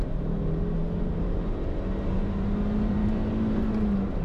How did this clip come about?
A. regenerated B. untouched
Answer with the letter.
A